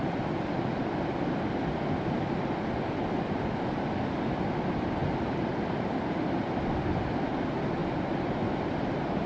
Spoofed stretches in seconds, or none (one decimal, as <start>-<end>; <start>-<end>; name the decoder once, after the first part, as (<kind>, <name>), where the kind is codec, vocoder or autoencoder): 7.8-8.4 (vocoder, BigVGAN v2)